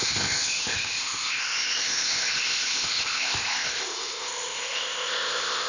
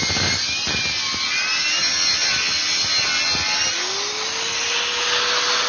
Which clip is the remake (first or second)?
first